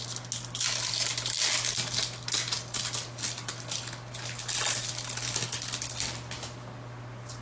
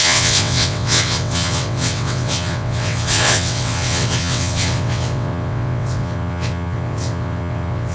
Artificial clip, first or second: second